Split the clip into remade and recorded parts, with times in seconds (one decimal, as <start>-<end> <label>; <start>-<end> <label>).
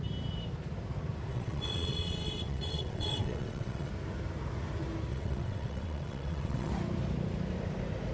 0.0-1.3 recorded; 1.3-3.9 remade; 3.9-5.1 recorded; 5.1-6.7 remade; 6.7-8.1 recorded